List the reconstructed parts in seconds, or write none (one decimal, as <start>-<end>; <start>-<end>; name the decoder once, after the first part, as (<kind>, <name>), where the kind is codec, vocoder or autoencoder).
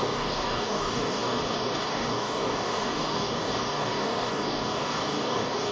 0.0-5.7 (codec, DAC)